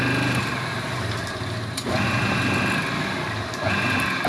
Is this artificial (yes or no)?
no